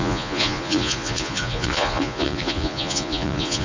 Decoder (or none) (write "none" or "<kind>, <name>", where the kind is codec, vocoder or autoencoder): vocoder, Vocos